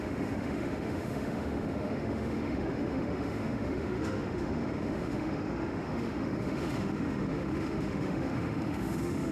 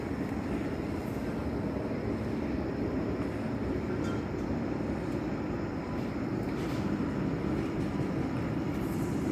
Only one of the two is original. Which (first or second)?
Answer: second